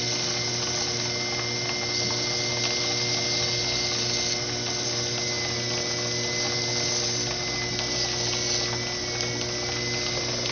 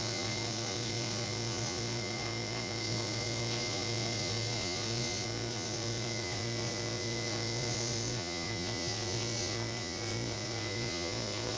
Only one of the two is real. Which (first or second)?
first